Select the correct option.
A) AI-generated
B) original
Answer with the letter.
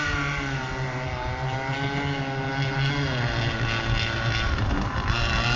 B